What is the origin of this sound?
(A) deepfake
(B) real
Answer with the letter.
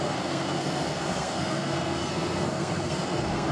A